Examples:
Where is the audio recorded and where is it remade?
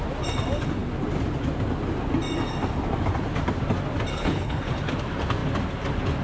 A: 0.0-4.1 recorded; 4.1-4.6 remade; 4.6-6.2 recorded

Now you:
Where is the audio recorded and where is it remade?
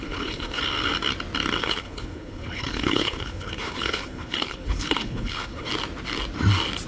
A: 0.0-0.6 remade; 0.6-1.6 recorded; 1.6-5.7 remade; 5.7-6.9 recorded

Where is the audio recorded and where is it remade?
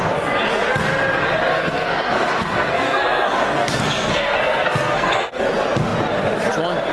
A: 0.0-1.5 recorded; 1.5-5.4 remade; 5.4-6.9 recorded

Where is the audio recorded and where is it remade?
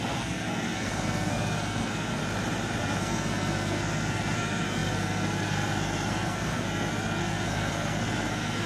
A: 0.0-2.2 remade; 2.2-2.8 recorded; 2.8-8.7 remade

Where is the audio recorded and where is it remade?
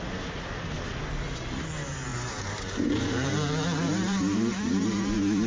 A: 0.0-2.1 recorded; 2.1-5.0 remade; 5.0-5.5 recorded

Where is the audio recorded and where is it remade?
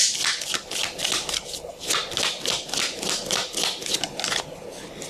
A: 0.0-5.1 recorded